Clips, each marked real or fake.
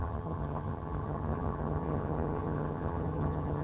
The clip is fake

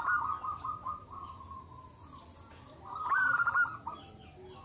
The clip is real